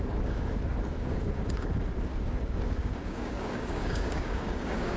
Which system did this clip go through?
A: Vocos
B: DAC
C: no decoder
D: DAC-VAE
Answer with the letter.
B